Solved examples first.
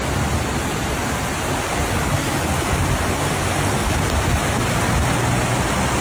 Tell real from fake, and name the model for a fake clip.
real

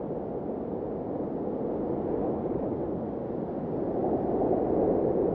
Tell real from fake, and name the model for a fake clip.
real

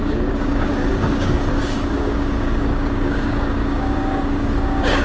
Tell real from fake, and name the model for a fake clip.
fake, codec, DAC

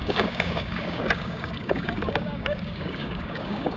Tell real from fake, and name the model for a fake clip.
fake, codec, DAC